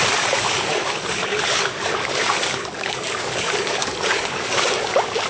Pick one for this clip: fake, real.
fake